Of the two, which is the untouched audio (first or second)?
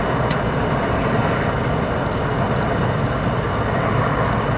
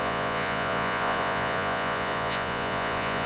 first